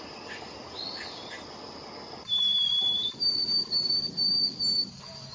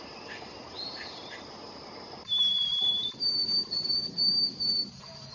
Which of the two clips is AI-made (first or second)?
second